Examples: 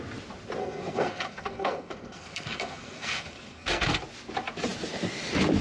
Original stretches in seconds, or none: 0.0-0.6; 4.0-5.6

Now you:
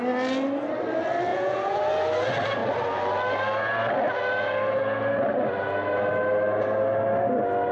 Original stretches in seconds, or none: 0.0-1.3; 1.8-7.7

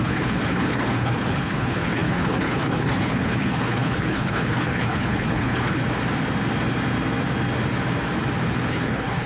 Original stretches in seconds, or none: 5.8-8.7

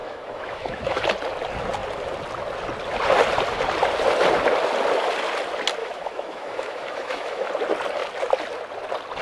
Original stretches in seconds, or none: 1.0-5.8; 7.5-9.2

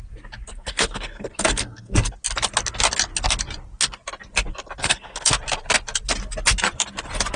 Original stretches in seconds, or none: 0.0-0.5; 2.1-4.8; 5.3-7.4

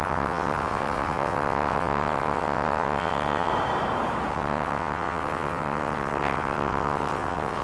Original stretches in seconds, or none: 3.5-4.3